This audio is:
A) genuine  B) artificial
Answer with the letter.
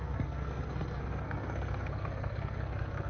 B